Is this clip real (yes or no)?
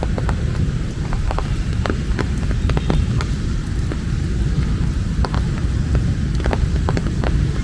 no